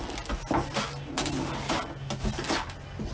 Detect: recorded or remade recorded